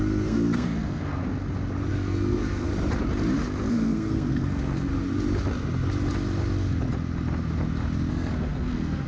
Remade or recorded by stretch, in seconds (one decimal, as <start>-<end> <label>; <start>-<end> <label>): 0.0-1.2 remade; 1.2-1.9 recorded; 1.9-2.7 remade; 2.7-3.7 recorded; 3.7-4.9 remade; 4.9-8.1 recorded; 8.1-9.1 remade